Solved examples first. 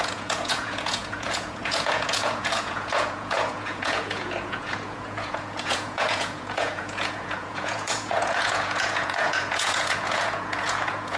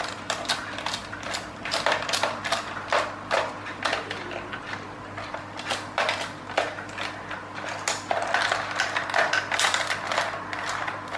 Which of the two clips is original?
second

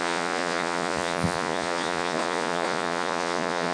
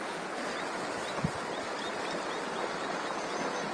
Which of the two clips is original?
second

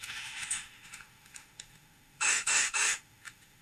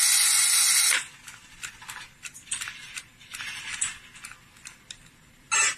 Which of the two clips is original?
second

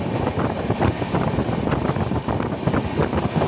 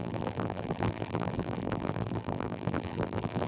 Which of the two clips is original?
first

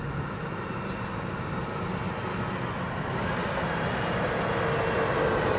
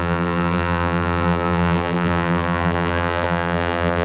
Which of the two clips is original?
first